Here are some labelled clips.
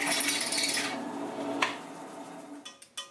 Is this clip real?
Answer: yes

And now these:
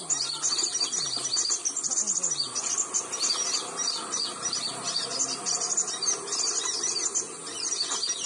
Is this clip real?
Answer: yes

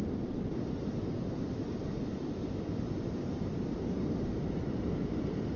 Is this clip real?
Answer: yes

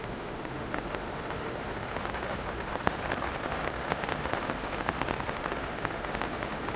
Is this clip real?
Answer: no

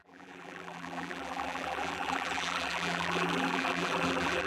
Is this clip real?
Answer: no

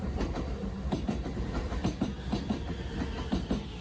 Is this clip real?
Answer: yes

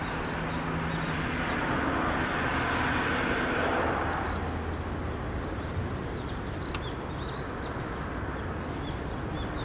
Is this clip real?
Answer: yes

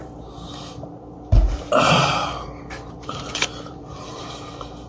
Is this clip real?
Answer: no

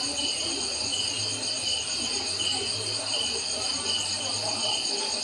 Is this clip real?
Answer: no